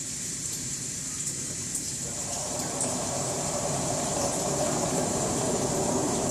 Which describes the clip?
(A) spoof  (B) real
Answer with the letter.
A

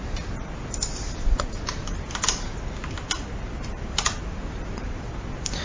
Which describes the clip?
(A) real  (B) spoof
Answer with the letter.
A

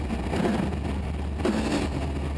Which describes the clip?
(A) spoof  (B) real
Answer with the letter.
B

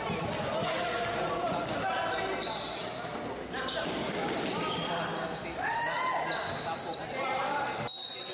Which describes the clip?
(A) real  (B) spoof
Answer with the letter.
A